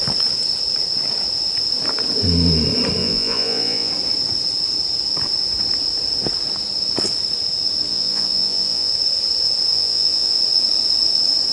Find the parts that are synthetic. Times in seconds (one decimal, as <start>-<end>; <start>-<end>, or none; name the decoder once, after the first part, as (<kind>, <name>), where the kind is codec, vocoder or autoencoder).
3.0-3.9 (vocoder, Vocos); 7.9-8.9; 9.7-10.4